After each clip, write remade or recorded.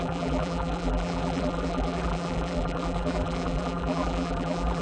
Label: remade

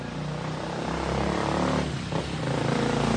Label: recorded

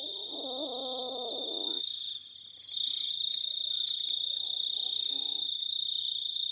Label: recorded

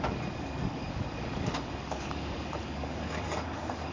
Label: remade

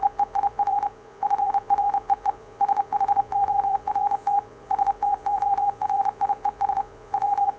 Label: remade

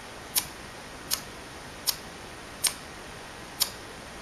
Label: remade